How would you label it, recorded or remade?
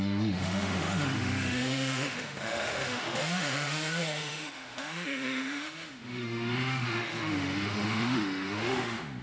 remade